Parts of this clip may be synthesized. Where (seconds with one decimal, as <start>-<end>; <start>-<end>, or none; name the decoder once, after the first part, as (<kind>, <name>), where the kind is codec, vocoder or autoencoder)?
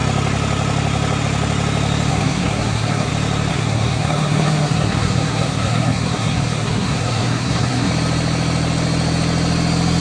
2.1-3.1 (codec, SNAC); 3.5-7.9